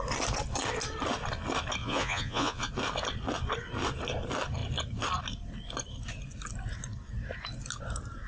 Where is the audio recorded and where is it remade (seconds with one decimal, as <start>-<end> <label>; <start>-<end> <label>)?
0.0-1.8 recorded; 1.8-2.7 remade; 2.7-8.3 recorded